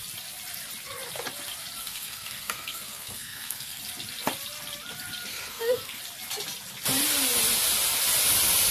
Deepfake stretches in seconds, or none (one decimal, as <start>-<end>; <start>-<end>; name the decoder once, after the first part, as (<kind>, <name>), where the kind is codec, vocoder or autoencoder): 1.8-3.8 (codec, SNAC); 5.3-6.0